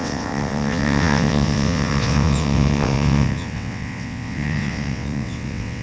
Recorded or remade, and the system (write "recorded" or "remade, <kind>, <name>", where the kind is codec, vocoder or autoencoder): remade, vocoder, WaveNeXt